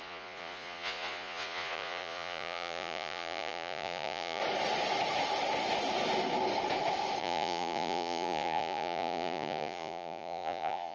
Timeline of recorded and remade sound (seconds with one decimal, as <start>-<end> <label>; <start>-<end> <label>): 0.0-4.4 remade; 4.4-7.2 recorded; 7.2-10.9 remade